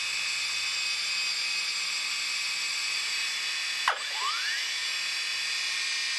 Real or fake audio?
real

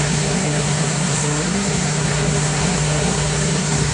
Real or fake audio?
fake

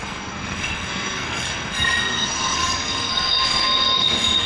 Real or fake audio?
fake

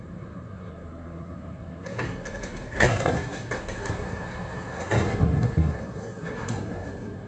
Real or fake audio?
fake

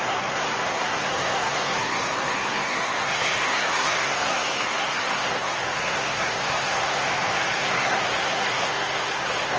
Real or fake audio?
fake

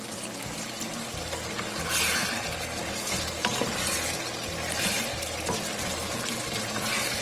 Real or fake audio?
real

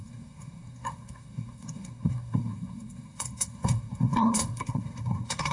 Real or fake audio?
fake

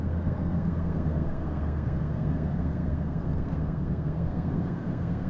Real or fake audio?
fake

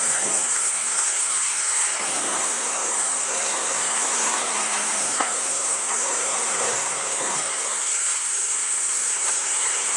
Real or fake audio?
fake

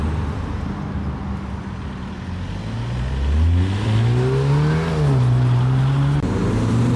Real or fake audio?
real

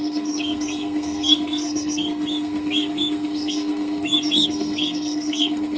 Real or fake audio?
fake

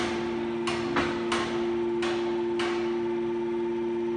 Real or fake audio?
real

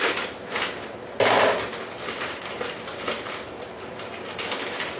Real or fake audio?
real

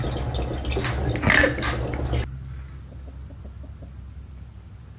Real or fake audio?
real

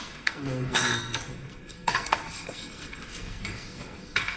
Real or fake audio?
fake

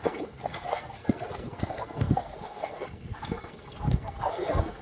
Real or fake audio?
fake